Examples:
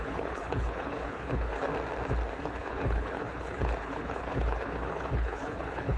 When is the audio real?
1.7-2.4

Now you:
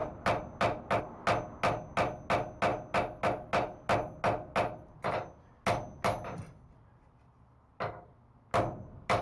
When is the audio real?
0.0-9.2

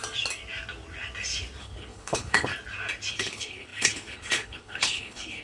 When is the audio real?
0.0-1.6; 2.5-3.1

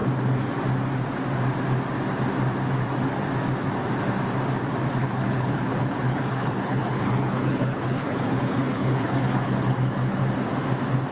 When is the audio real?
0.0-5.0; 10.2-11.1

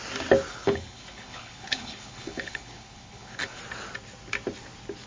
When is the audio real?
0.0-0.5; 3.6-5.1

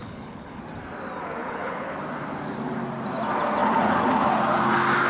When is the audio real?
0.6-1.4; 2.0-5.1

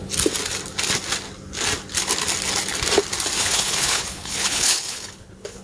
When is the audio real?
0.0-3.4